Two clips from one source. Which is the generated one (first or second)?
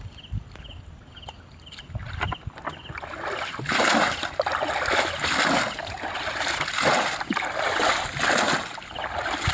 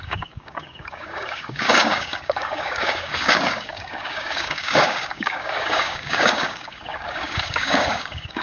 second